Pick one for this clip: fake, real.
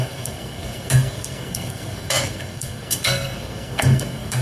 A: fake